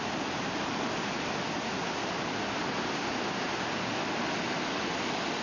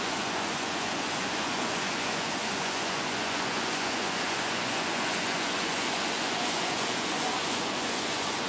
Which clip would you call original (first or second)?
first